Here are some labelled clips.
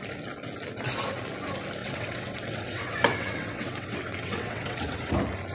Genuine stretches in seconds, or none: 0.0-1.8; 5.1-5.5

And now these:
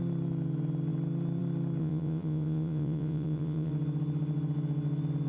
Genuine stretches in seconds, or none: 0.0-1.8; 3.7-5.3

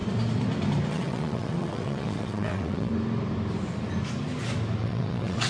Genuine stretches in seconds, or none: 0.0-0.9; 2.9-4.8

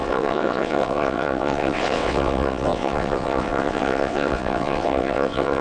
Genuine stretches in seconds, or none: none

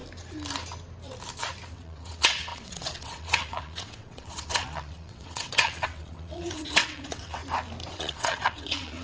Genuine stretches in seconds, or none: 0.0-1.7; 7.4-7.9

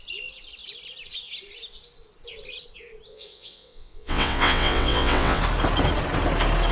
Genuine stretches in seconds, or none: 0.0-3.1; 5.4-6.7

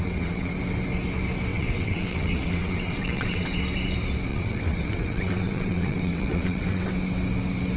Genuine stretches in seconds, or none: 0.5-1.5; 3.6-4.3; 6.9-7.8